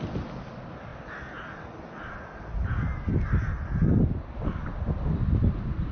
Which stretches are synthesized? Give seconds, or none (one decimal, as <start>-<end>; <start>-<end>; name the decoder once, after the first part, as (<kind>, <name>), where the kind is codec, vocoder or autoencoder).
none